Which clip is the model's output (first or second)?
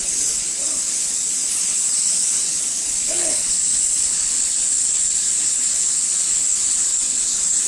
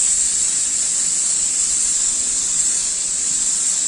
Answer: first